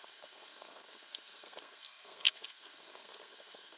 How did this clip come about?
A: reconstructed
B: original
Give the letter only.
A